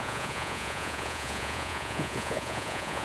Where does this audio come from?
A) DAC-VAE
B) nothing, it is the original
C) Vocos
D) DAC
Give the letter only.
C